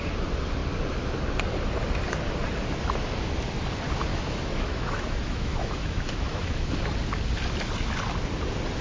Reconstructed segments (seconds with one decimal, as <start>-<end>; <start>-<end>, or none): 4.1-6.8